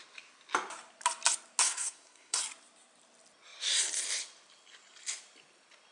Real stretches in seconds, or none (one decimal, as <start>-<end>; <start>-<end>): 0.0-1.6; 2.4-5.9